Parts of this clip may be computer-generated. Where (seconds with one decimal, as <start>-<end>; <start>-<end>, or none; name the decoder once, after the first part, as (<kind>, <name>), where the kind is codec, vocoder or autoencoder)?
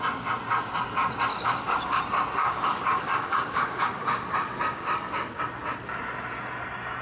1.3-2.0 (codec, DAC); 2.4-5.4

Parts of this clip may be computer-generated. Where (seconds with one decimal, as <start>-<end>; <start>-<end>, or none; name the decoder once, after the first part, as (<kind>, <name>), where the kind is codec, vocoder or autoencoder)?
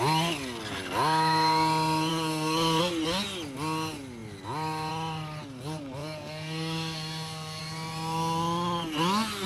2.1-2.8 (codec, DAC); 6.0-7.6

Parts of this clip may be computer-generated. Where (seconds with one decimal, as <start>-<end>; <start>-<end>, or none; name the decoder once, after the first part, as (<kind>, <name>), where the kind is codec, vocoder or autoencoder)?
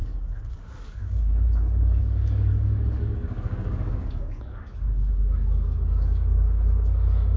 0.0-7.4 (codec, DAC)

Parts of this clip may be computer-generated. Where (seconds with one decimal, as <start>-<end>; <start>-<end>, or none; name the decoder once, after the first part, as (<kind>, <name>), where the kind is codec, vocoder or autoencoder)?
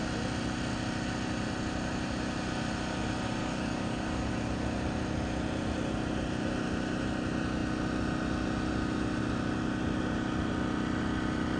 3.4-4.3 (codec, DAC)